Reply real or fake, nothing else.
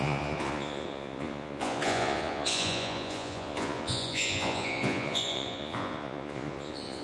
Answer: fake